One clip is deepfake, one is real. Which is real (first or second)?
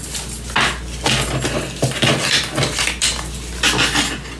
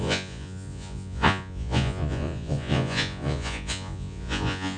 first